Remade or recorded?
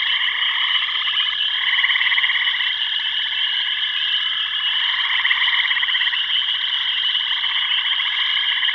recorded